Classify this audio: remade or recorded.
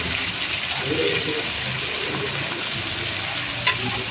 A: recorded